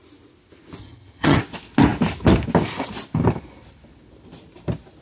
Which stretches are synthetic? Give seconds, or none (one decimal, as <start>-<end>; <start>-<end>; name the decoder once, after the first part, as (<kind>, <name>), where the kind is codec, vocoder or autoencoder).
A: 0.8-1.4 (vocoder, HiFi-GAN)